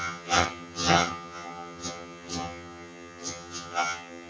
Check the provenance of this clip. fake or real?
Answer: fake